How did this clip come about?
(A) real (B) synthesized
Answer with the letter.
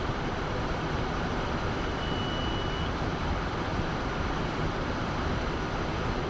A